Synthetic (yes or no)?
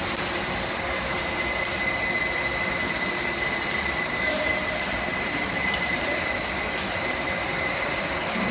no